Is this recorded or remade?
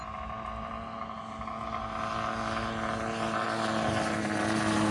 recorded